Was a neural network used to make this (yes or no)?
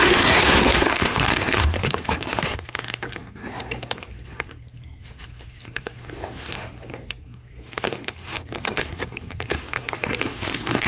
yes